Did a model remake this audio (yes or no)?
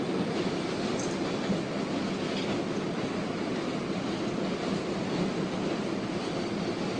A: no